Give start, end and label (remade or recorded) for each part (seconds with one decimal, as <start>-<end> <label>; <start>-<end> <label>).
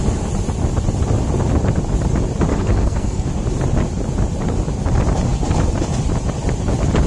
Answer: 0.0-2.5 recorded; 2.5-3.3 remade; 3.3-7.1 recorded